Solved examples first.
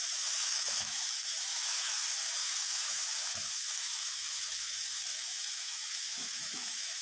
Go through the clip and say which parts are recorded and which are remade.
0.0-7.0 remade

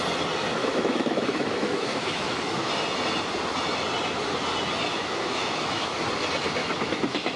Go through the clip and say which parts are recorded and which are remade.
0.0-0.6 recorded; 0.6-2.7 remade; 2.7-4.9 recorded; 4.9-6.0 remade; 6.0-6.6 recorded; 6.6-7.4 remade

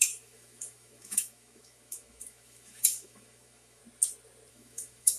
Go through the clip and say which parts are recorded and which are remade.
0.0-3.8 remade; 3.8-4.5 recorded; 4.5-5.2 remade

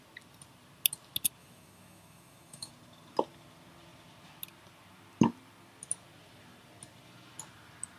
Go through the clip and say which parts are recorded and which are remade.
0.0-1.4 recorded; 1.4-2.7 remade; 2.7-8.0 recorded

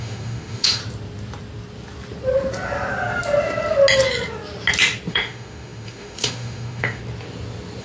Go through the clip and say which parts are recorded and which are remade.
0.0-0.8 remade; 0.8-5.1 recorded; 5.1-7.0 remade; 7.0-7.8 recorded

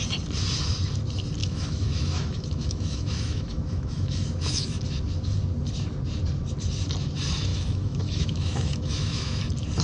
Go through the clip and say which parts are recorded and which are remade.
0.0-1.4 recorded; 1.4-4.8 remade; 4.8-7.5 recorded; 7.5-9.4 remade; 9.4-9.8 recorded